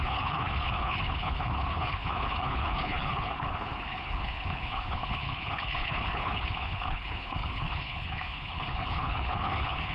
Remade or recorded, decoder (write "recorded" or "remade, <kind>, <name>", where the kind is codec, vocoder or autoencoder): remade, codec, HILCodec